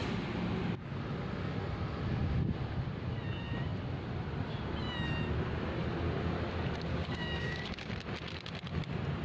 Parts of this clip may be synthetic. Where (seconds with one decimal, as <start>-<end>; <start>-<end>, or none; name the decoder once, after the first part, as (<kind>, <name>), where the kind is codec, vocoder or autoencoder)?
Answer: 6.9-7.9 (codec, DAC)